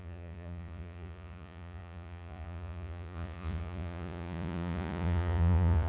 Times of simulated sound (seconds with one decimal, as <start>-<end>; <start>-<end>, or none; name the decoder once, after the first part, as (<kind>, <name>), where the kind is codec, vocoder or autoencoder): 0.0-5.9 (vocoder, Vocos)